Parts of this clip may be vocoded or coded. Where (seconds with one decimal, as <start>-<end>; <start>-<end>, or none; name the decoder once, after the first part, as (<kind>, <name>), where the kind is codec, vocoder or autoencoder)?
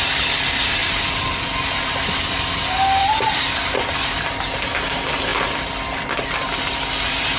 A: 0.8-1.3 (vocoder, BigVGAN v2); 3.0-3.6